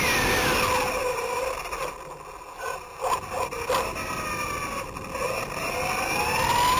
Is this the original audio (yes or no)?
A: yes